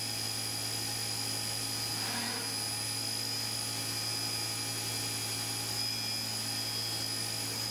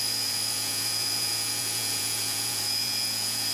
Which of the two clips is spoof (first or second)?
second